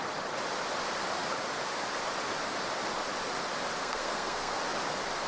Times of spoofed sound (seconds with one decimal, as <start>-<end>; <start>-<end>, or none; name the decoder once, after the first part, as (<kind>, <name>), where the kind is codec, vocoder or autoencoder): 3.8-4.6 (codec, SNAC)